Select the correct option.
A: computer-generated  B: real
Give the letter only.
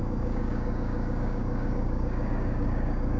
A